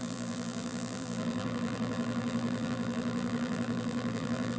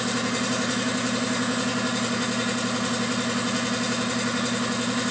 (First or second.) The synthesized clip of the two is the first